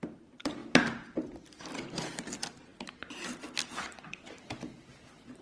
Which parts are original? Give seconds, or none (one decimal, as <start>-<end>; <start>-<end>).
0.0-5.4